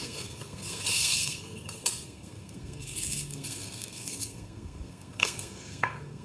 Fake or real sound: fake